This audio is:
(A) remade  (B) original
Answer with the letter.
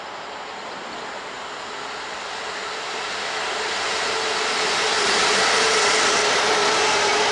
B